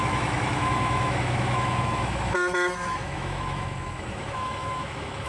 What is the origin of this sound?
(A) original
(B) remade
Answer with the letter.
B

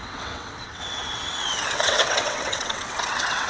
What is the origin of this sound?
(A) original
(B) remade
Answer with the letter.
B